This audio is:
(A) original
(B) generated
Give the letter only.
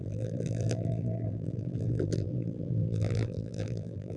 B